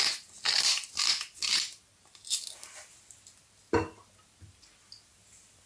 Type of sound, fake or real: real